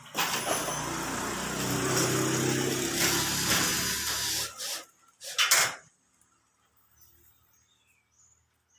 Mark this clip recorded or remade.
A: recorded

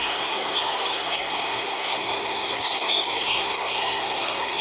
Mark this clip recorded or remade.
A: remade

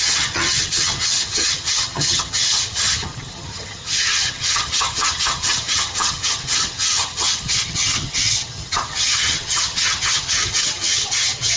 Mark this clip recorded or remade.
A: remade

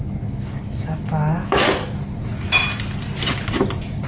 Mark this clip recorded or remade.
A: recorded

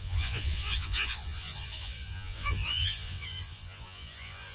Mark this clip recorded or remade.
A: remade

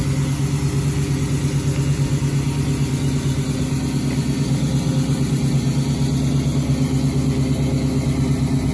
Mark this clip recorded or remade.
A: recorded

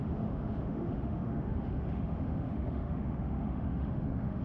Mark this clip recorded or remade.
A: remade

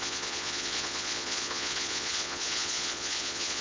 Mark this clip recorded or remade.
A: remade